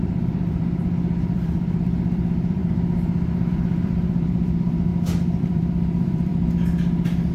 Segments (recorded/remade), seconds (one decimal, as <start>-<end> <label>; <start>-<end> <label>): 0.0-4.9 remade; 4.9-5.4 recorded; 5.4-6.3 remade; 6.3-7.3 recorded